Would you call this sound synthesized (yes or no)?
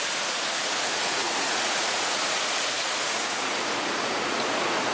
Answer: yes